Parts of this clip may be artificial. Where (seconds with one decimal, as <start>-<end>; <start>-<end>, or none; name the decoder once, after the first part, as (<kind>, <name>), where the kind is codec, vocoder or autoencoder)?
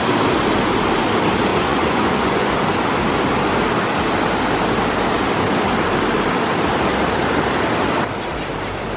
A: 1.5-2.5 (vocoder, Vocos)